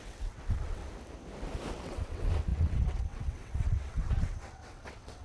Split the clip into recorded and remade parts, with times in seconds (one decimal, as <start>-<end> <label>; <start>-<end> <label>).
0.0-0.8 remade; 0.8-1.7 recorded; 1.7-5.2 remade